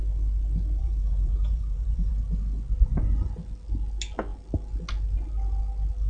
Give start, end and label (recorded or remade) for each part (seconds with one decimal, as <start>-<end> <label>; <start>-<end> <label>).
0.0-0.8 recorded; 0.8-2.1 remade; 2.1-6.1 recorded